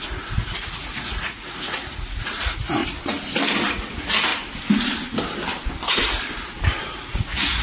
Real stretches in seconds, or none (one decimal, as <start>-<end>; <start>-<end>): 2.8-3.7; 4.3-6.8